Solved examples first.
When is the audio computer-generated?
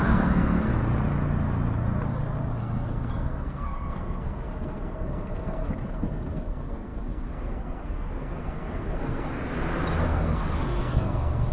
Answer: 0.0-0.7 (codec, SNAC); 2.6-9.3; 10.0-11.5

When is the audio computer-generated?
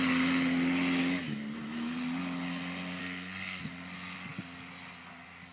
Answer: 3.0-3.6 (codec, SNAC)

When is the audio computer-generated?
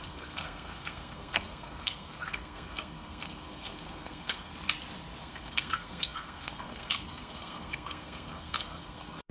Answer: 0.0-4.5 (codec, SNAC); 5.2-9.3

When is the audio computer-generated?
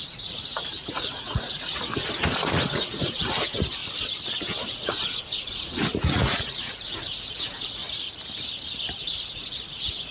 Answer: 0.0-3.8 (vocoder, Vocos); 4.7-7.8; 9.0-10.1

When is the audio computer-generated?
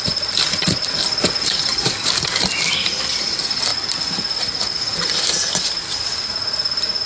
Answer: 1.7-3.2 (vocoder, BigVGAN v2)